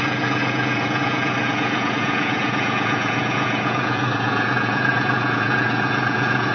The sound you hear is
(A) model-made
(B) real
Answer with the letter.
A